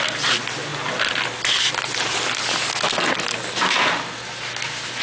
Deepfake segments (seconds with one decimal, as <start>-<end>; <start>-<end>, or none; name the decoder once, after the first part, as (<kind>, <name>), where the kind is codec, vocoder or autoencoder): none